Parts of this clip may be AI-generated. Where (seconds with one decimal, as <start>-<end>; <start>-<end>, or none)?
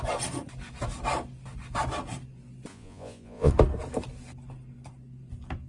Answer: 2.7-3.5